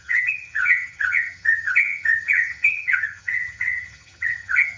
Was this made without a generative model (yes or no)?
no